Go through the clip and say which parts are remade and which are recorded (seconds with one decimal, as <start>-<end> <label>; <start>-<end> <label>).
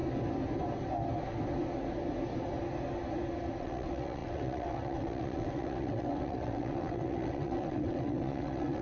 0.0-3.6 recorded; 3.6-8.8 remade